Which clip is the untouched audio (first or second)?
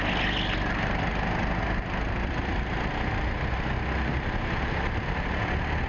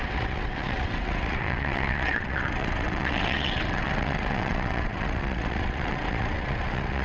first